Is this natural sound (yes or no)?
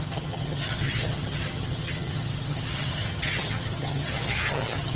no